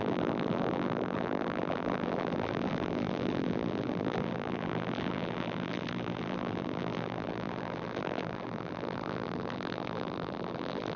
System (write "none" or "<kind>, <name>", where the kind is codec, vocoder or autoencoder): vocoder, BigVGAN v2